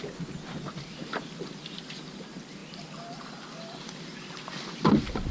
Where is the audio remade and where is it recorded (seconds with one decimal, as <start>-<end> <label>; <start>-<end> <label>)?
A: 0.0-5.3 recorded

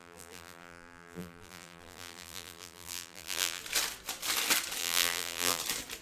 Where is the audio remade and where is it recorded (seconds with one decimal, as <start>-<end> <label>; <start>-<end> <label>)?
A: 0.0-3.6 remade; 3.6-4.8 recorded; 4.8-5.6 remade; 5.6-6.0 recorded

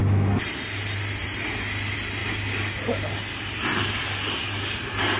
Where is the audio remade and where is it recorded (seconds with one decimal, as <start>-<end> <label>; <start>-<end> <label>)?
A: 0.0-5.2 recorded

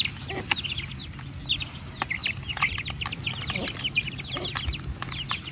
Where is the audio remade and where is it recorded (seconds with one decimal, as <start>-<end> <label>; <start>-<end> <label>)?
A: 0.0-5.5 recorded

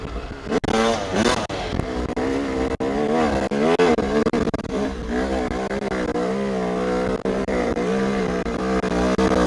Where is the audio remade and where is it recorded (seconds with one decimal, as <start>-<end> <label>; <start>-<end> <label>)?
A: 0.0-3.9 recorded; 3.9-5.0 remade; 5.0-7.2 recorded; 7.2-8.6 remade; 8.6-9.5 recorded

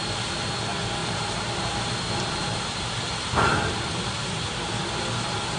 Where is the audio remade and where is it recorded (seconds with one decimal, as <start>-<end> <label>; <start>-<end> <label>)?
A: 0.0-1.0 recorded; 1.0-2.0 remade; 2.0-2.4 recorded; 2.4-3.5 remade; 3.5-5.6 recorded